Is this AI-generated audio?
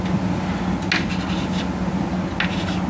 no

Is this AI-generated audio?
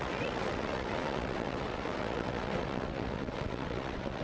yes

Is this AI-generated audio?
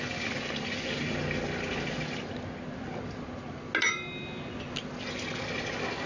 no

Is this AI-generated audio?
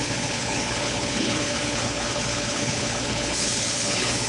yes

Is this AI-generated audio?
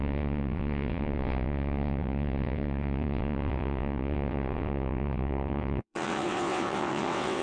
yes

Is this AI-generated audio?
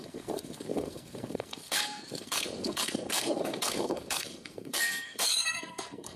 yes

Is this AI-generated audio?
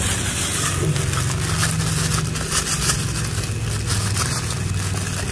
no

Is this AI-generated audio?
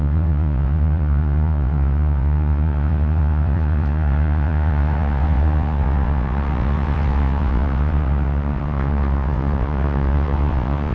yes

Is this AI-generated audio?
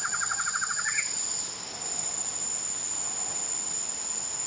no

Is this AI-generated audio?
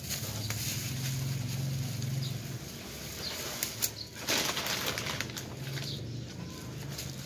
no